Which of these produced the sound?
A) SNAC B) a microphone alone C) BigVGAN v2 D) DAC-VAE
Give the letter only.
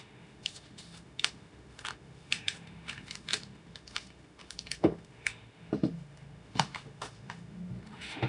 D